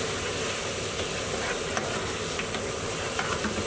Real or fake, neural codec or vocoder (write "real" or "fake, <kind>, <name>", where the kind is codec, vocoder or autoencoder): real